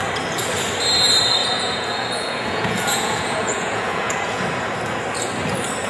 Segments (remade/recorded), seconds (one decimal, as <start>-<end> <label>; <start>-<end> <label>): 0.0-1.4 recorded; 1.4-4.4 remade; 4.4-5.9 recorded